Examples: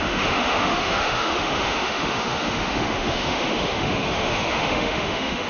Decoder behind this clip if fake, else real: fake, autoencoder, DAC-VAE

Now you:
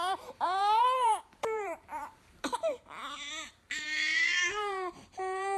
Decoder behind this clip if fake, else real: fake, vocoder, BigVGAN v2